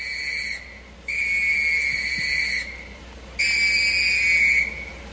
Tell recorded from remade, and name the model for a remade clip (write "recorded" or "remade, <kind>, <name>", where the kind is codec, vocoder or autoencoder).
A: recorded